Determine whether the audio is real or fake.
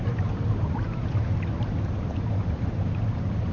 fake